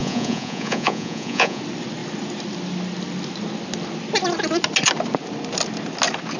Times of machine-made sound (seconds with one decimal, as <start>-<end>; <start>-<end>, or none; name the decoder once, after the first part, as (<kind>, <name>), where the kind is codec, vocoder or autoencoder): 0.0-1.6 (vocoder, Vocos)

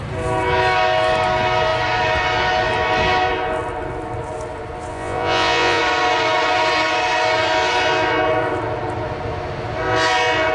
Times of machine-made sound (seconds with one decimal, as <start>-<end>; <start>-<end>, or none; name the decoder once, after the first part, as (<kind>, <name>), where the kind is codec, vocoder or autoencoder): 4.9-5.8 (vocoder, Vocos)

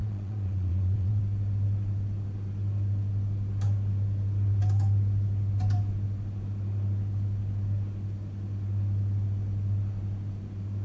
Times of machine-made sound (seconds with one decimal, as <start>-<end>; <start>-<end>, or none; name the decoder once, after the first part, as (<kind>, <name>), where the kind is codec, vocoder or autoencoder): 0.0-1.2 (vocoder, Vocos)

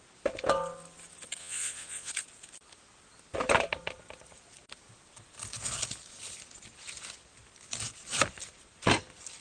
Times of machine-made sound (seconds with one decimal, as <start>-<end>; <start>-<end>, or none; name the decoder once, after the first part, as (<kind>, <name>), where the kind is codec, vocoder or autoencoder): 1.4-2.1 (vocoder, Vocos)

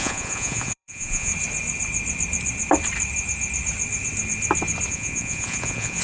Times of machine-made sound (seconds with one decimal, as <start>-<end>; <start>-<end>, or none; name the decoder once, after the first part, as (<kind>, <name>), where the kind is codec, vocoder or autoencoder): 0.0-1.3 (vocoder, Vocos); 4.9-6.0

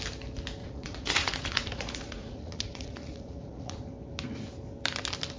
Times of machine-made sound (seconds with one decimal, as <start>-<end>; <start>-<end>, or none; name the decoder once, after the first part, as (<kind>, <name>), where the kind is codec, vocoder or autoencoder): 0.6-3.8 (vocoder, Vocos)

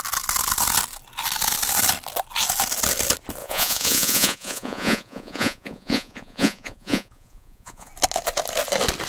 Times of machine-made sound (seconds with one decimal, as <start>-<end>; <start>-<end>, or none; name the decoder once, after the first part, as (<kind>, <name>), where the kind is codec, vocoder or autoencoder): 3.4-7.9 (vocoder, Vocos)

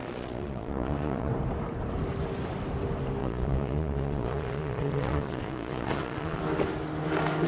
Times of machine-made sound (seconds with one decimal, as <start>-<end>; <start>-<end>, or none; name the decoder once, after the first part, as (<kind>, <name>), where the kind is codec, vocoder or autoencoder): 0.0-1.3 (vocoder, Vocos); 3.2-6.4